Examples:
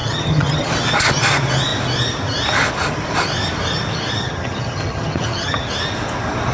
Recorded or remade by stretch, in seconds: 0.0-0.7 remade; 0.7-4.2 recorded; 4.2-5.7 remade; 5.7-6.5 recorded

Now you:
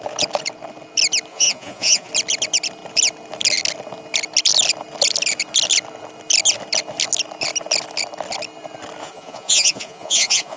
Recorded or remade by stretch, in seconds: 0.0-1.3 recorded; 1.3-2.1 remade; 2.1-9.0 recorded; 9.0-10.6 remade

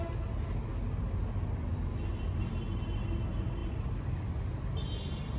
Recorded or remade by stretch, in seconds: 0.0-5.4 recorded

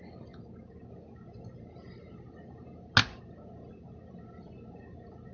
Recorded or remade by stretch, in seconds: 0.0-5.3 recorded

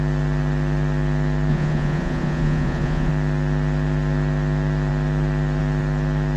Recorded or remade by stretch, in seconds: 0.0-1.5 recorded; 1.5-3.1 remade; 3.1-6.4 recorded